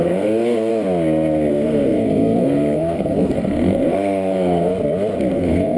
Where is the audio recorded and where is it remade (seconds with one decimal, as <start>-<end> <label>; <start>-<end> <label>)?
0.0-0.7 remade; 0.7-1.5 recorded; 1.5-4.7 remade; 4.7-5.3 recorded; 5.3-5.8 remade